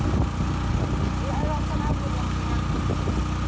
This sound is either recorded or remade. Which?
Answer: recorded